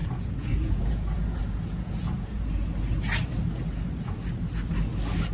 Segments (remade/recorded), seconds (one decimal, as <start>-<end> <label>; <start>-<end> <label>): 0.0-2.5 remade; 2.5-5.3 recorded